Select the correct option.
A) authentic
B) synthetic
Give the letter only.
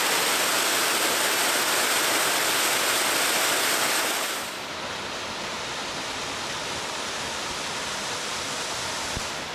A